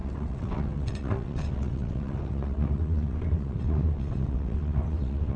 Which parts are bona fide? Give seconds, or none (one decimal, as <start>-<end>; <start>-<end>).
none